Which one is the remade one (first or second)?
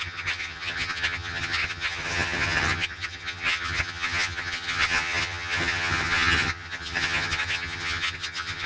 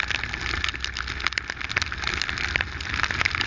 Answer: first